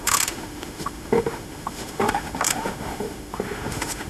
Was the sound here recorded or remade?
remade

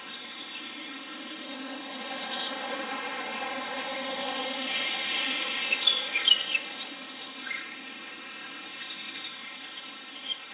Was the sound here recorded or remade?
remade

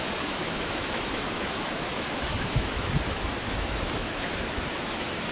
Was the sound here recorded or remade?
remade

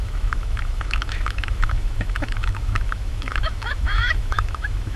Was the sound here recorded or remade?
remade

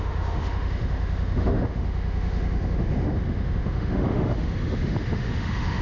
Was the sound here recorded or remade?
remade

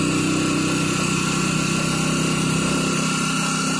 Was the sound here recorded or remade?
recorded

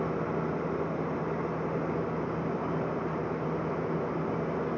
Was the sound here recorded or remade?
recorded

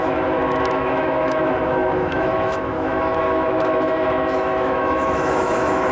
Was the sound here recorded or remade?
remade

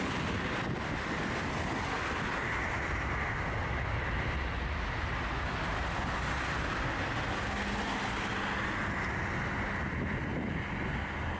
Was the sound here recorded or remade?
recorded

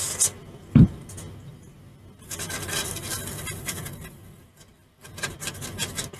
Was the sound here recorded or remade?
recorded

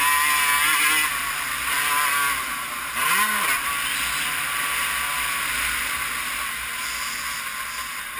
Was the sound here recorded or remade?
recorded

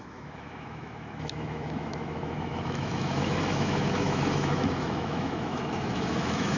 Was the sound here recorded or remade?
remade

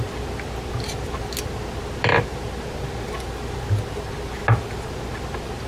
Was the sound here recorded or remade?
recorded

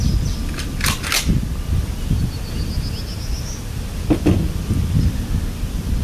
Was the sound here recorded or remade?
recorded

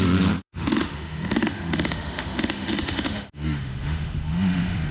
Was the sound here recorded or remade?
remade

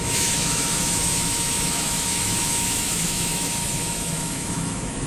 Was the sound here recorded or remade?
remade